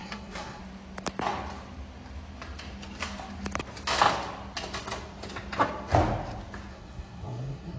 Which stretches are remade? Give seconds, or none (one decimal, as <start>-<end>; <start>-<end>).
0.0-0.6; 6.7-7.8